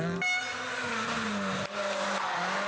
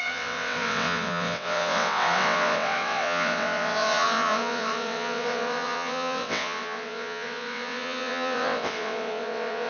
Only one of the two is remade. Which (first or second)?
second